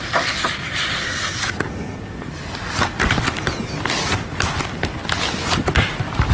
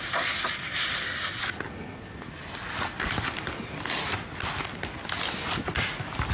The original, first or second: second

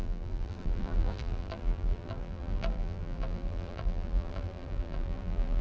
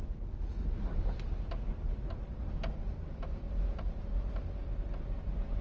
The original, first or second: second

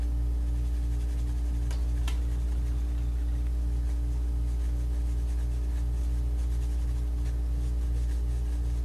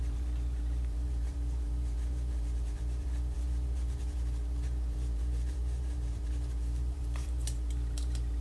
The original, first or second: first